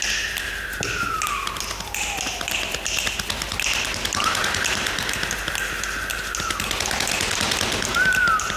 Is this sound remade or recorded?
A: recorded